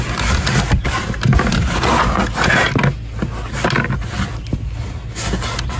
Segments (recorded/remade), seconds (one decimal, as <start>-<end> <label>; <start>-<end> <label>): 0.0-5.8 recorded